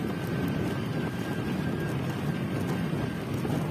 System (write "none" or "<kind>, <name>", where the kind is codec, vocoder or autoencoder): none